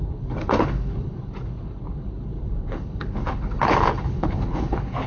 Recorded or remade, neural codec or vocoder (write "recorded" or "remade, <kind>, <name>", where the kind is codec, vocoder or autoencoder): remade, codec, HILCodec